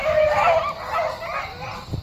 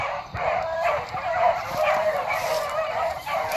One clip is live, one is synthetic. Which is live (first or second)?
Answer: first